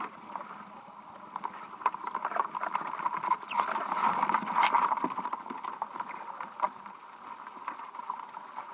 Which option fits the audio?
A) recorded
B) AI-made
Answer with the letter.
A